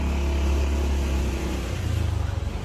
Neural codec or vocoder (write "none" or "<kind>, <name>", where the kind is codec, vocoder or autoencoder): none